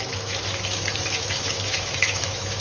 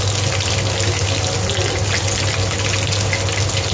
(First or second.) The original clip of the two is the second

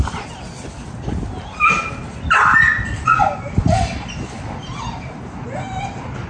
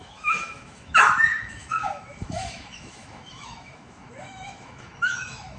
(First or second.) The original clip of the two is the first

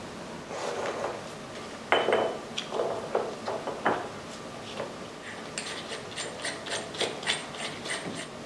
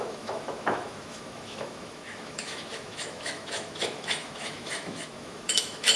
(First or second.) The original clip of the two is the first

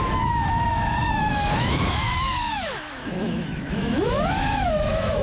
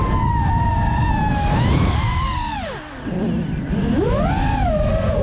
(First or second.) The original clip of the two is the second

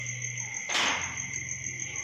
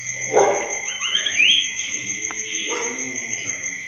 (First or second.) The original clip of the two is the first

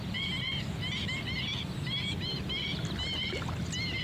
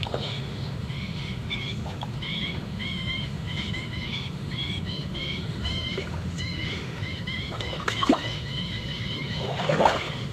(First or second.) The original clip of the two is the first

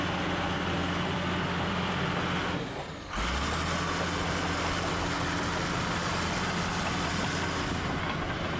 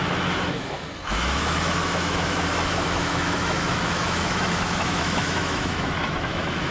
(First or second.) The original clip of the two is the first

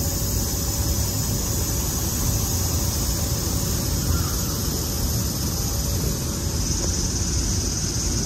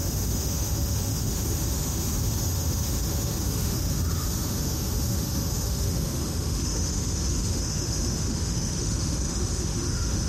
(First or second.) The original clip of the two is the first